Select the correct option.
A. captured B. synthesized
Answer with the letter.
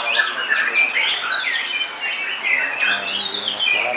A